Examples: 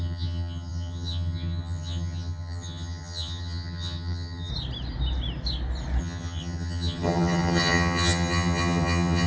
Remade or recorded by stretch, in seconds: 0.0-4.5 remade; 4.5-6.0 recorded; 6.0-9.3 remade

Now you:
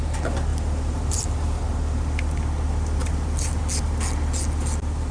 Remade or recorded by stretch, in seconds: 0.0-0.5 recorded; 0.5-1.6 remade; 1.6-3.0 recorded; 3.0-3.6 remade; 3.6-5.1 recorded

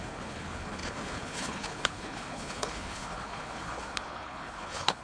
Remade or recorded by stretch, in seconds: 0.0-5.0 remade